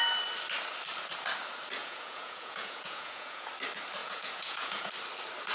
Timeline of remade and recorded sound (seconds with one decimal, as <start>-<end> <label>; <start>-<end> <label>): 0.0-1.8 recorded; 1.8-3.5 remade; 3.5-4.0 recorded; 4.0-4.9 remade; 4.9-5.5 recorded